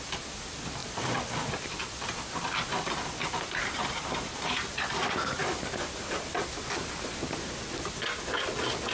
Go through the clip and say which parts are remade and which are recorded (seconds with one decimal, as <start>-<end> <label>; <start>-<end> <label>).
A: 0.0-8.9 recorded